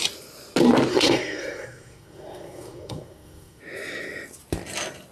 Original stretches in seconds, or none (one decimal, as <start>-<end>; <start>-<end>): 0.0-0.9; 3.6-5.1